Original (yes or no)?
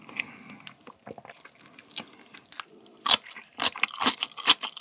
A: yes